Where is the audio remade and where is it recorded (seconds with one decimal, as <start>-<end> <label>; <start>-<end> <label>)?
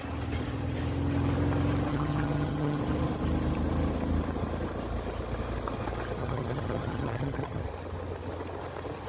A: 0.0-1.9 recorded; 1.9-2.8 remade; 2.8-6.2 recorded; 6.2-7.6 remade; 7.6-9.1 recorded